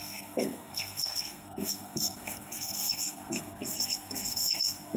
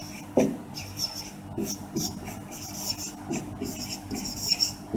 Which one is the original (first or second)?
second